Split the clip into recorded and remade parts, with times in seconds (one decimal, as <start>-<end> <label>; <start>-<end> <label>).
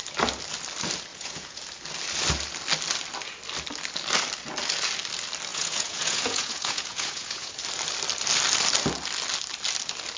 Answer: 0.0-1.1 recorded; 1.1-1.6 remade; 1.6-5.5 recorded; 5.5-7.5 remade; 7.5-10.2 recorded